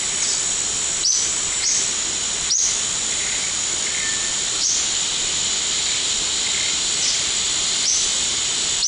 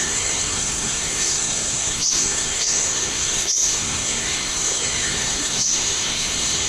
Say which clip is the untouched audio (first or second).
first